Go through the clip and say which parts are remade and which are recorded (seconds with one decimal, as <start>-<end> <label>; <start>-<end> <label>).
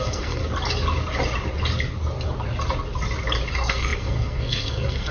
0.0-0.4 remade; 0.4-3.5 recorded; 3.5-5.1 remade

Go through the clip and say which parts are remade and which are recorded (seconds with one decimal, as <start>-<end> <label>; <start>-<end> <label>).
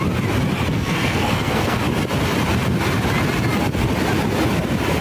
0.0-0.7 recorded; 0.7-1.8 remade; 1.8-5.0 recorded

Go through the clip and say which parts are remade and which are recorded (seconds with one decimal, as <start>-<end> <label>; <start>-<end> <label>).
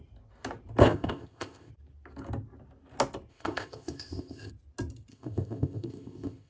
0.0-0.8 recorded; 0.8-1.7 remade; 1.7-3.3 recorded; 3.3-4.5 remade; 4.5-5.1 recorded; 5.1-6.5 remade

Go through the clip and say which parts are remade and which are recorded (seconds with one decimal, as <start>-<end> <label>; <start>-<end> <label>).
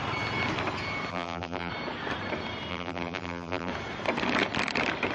0.0-1.1 recorded; 1.1-1.7 remade; 1.7-2.7 recorded; 2.7-3.7 remade; 3.7-5.1 recorded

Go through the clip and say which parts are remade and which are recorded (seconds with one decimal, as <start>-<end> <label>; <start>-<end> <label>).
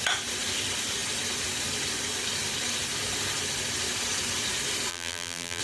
0.0-4.9 recorded; 4.9-5.6 remade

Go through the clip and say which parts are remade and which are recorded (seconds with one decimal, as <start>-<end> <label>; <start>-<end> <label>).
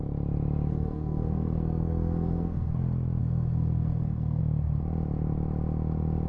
0.0-0.7 recorded; 0.7-2.7 remade; 2.7-3.2 recorded; 3.2-4.4 remade; 4.4-6.3 recorded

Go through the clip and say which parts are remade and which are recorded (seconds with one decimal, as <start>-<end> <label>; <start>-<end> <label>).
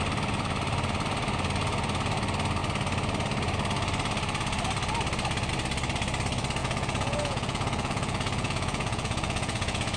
0.0-6.6 recorded; 6.6-10.0 remade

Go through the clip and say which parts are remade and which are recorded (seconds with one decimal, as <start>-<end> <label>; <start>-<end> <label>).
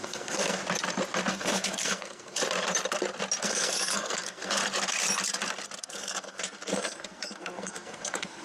0.0-0.6 remade; 0.6-1.3 recorded; 1.3-2.4 remade; 2.4-3.4 recorded; 3.4-4.6 remade; 4.6-5.8 recorded; 5.8-8.4 remade